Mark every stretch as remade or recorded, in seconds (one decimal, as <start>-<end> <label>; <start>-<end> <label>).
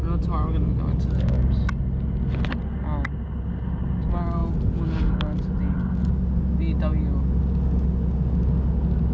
0.0-9.1 recorded